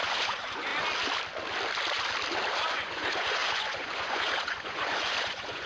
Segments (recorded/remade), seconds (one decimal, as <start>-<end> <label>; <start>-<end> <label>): 0.0-0.7 remade; 0.7-2.7 recorded; 2.7-5.7 remade